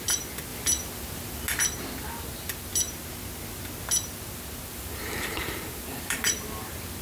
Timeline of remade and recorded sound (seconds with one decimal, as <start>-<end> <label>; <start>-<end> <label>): 0.0-4.7 recorded; 4.7-6.3 remade; 6.3-7.0 recorded